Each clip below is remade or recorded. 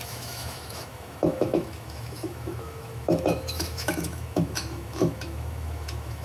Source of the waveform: remade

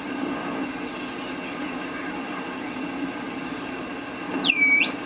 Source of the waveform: recorded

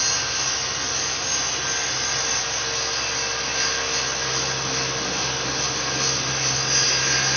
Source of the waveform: recorded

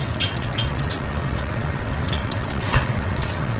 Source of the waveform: remade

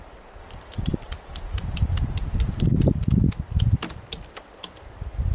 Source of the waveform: recorded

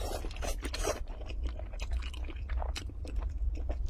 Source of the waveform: remade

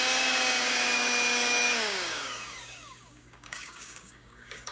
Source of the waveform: remade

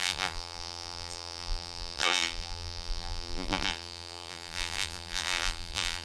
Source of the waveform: remade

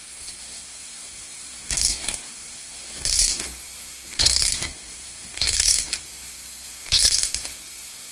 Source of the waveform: remade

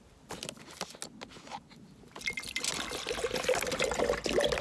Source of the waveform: recorded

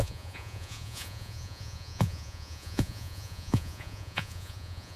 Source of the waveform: remade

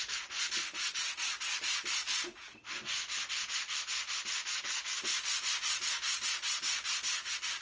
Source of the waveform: recorded